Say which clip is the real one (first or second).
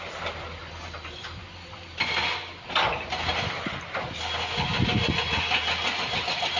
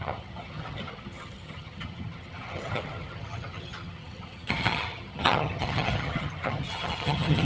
first